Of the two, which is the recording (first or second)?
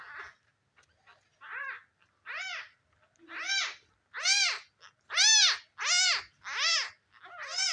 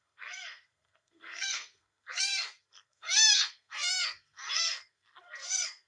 first